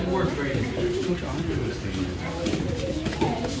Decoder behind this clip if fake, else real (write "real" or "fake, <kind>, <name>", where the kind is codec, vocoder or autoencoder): real